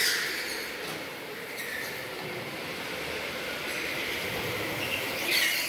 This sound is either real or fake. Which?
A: real